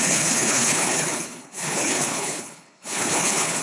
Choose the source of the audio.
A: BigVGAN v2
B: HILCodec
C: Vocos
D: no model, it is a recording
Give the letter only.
B